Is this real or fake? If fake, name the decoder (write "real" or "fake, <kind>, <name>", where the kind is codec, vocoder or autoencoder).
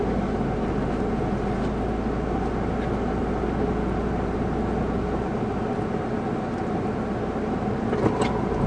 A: real